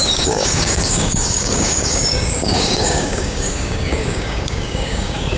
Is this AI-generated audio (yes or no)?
yes